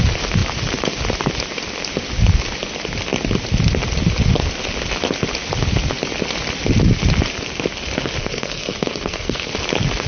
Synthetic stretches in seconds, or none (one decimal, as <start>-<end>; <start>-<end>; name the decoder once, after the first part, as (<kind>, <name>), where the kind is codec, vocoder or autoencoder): 8.2-9.5 (codec, SNAC)